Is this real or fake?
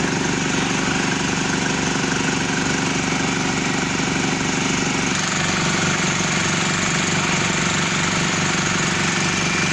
real